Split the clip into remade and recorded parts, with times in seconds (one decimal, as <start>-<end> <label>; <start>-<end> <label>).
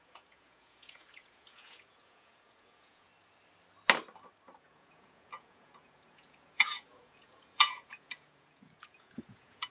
0.0-3.1 remade; 3.1-4.6 recorded; 4.6-9.7 remade